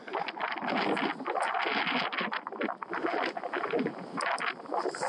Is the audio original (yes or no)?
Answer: yes